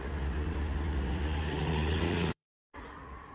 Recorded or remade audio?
remade